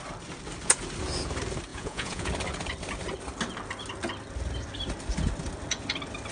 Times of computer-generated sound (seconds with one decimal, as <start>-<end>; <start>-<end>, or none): 1.7-2.3